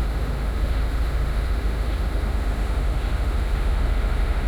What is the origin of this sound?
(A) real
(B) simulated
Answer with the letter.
B